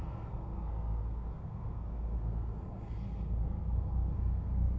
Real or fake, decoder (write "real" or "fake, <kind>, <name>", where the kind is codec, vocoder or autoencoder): fake, codec, SNAC